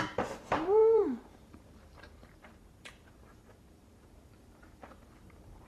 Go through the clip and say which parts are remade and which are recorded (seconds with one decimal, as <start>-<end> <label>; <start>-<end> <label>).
0.0-5.7 remade